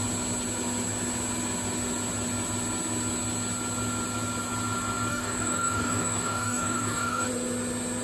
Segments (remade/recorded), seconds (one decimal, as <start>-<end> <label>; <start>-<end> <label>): 0.0-5.1 recorded; 5.1-7.3 remade; 7.3-8.0 recorded